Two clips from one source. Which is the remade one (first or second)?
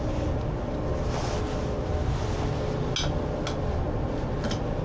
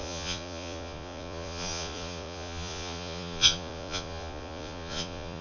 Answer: second